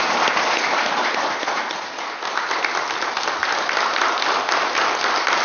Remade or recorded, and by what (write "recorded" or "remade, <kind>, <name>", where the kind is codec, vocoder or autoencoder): recorded